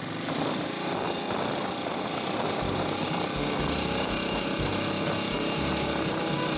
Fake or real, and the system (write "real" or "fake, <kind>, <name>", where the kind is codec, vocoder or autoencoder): real